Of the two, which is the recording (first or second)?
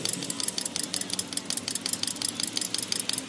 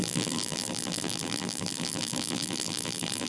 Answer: first